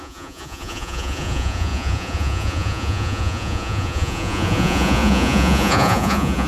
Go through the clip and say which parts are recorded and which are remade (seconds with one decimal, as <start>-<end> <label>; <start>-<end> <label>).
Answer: 0.0-6.5 remade